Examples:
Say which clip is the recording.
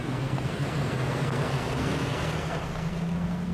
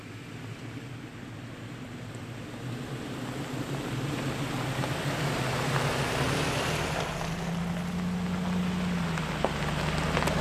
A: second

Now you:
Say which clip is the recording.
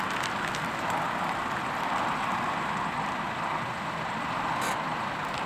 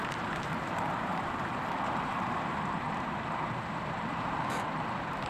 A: first